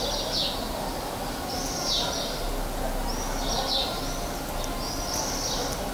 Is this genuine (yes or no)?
yes